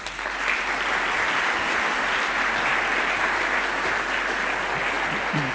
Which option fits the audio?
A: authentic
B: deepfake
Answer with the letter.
A